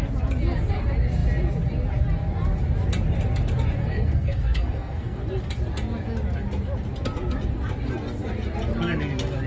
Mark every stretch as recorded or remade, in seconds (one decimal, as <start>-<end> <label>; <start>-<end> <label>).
0.0-3.8 recorded; 3.8-5.2 remade; 5.2-9.5 recorded